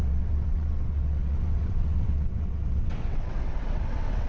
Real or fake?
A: fake